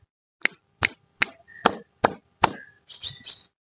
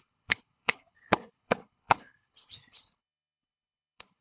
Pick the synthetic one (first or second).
second